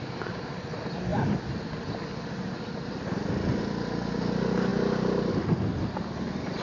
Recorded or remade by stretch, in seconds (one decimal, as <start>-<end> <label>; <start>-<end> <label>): 0.0-6.6 recorded

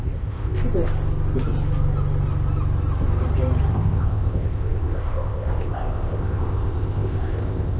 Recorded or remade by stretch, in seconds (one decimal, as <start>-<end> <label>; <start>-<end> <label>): 0.0-0.6 remade; 0.6-3.7 recorded; 3.7-7.8 remade

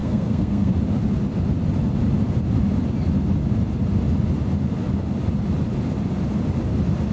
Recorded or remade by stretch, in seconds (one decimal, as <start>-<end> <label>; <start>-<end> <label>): 0.0-0.7 remade; 0.7-7.1 recorded

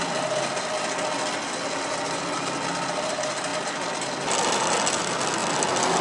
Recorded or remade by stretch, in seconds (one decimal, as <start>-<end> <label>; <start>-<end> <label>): 0.0-6.0 recorded

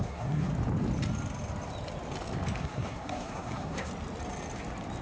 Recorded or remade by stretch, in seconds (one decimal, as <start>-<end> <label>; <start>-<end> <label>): 0.0-0.5 remade; 0.5-2.6 recorded; 2.6-3.9 remade; 3.9-5.0 recorded

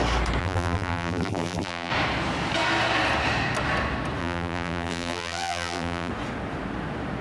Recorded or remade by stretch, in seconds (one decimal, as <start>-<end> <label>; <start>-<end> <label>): 0.0-0.4 recorded; 0.4-1.9 remade; 1.9-4.2 recorded; 4.2-6.1 remade; 6.1-7.2 recorded

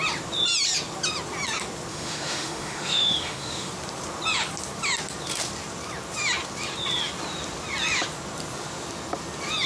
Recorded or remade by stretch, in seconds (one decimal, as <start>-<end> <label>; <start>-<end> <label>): 0.0-1.9 recorded; 1.9-3.7 remade; 3.7-9.7 recorded

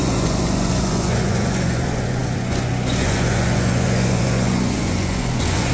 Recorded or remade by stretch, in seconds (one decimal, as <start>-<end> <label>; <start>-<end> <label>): 0.0-5.7 remade